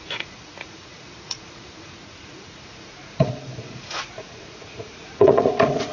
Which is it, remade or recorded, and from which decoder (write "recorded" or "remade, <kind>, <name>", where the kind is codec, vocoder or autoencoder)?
remade, vocoder, Vocos